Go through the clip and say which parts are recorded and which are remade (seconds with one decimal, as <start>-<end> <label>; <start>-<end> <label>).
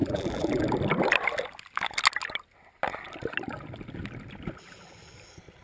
0.0-0.6 remade; 0.6-5.6 recorded